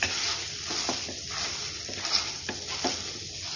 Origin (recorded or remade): recorded